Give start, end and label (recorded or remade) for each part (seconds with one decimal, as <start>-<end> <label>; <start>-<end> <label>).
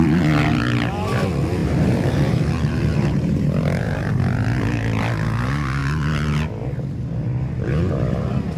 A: 0.0-1.6 recorded; 1.6-2.5 remade; 2.5-2.9 recorded; 2.9-4.1 remade; 4.1-8.6 recorded